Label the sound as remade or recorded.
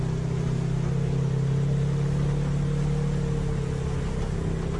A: recorded